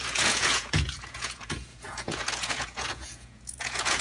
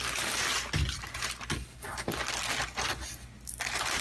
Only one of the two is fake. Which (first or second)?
first